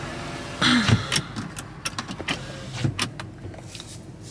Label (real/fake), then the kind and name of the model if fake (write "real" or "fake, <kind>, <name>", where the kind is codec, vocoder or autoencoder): real